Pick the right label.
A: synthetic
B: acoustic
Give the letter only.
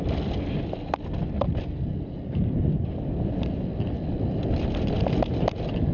B